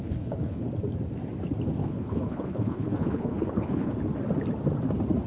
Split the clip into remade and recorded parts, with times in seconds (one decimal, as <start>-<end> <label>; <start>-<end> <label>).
0.0-0.7 remade; 0.7-1.8 recorded; 1.8-3.9 remade; 3.9-5.3 recorded